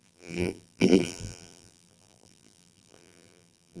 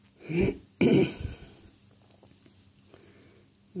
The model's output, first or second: first